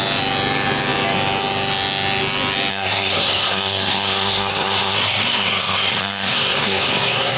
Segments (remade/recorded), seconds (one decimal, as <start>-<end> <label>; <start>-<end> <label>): 0.0-2.7 recorded; 2.7-7.4 remade